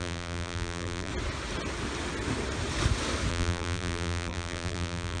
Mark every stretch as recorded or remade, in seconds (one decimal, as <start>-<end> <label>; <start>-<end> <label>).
0.0-1.1 remade; 1.1-3.3 recorded; 3.3-5.2 remade